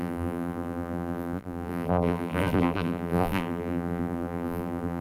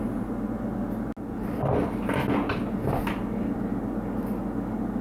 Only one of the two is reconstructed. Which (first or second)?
first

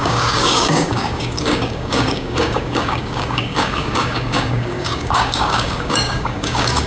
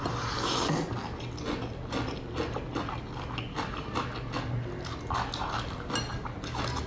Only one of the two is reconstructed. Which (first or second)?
first